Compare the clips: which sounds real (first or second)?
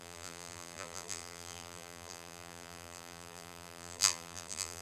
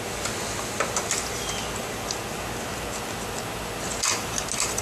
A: second